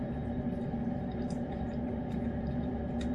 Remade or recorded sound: recorded